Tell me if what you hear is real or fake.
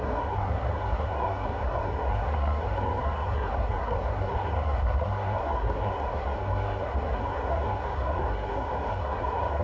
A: fake